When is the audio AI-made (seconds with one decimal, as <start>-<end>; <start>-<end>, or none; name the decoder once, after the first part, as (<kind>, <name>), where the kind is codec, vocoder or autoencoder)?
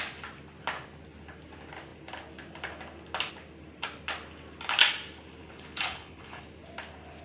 5.4-6.4 (codec, HILCodec)